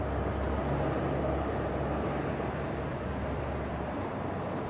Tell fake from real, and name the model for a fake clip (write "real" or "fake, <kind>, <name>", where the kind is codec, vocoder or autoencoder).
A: real